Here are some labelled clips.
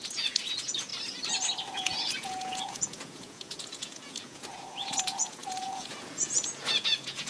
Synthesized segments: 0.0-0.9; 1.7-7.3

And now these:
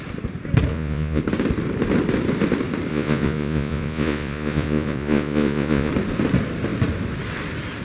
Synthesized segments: 0.7-1.2; 2.9-5.9

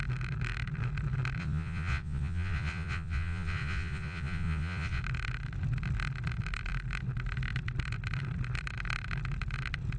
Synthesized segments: 1.4-5.0

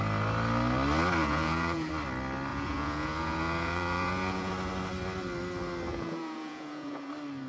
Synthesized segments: 1.2-1.9; 2.5-4.5; 5.9-7.1

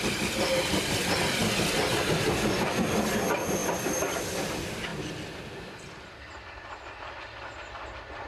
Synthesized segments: none

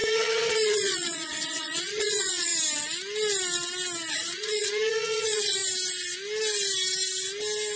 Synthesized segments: 0.0-2.5; 4.1-5.6

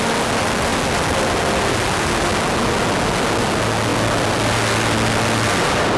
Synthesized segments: none